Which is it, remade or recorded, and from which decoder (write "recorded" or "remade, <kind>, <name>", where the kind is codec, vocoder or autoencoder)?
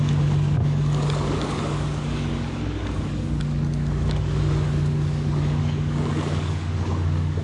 remade, codec, DAC